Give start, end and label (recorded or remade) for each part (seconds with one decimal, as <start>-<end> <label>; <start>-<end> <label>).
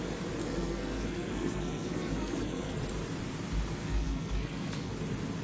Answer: 0.0-0.4 recorded; 0.4-2.8 remade; 2.8-3.8 recorded; 3.8-4.9 remade; 4.9-5.4 recorded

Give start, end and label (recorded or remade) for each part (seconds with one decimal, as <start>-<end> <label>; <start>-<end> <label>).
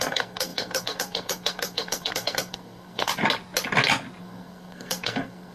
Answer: 0.0-3.1 remade; 3.1-4.2 recorded; 4.2-5.5 remade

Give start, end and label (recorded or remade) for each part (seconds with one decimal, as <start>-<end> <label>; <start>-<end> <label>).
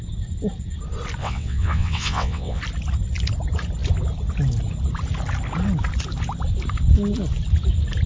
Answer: 0.0-1.2 recorded; 1.2-2.6 remade; 2.6-8.1 recorded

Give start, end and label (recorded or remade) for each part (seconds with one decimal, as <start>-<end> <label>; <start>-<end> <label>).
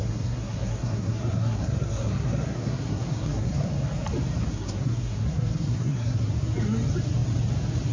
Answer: 0.0-3.7 remade; 3.7-4.5 recorded; 4.5-6.3 remade; 6.3-7.9 recorded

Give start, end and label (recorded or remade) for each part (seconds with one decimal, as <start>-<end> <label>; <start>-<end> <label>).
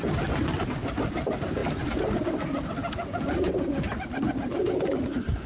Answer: 0.0-5.5 recorded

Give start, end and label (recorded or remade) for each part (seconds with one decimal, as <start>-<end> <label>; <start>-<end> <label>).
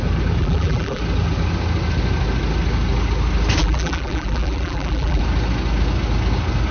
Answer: 0.0-0.4 recorded; 0.4-1.0 remade; 1.0-3.6 recorded; 3.6-5.2 remade; 5.2-6.7 recorded